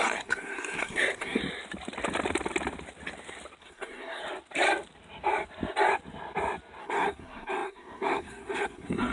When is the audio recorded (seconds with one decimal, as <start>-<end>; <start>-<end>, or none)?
1.4-3.6; 4.2-6.8